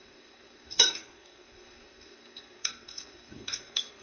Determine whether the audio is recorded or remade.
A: remade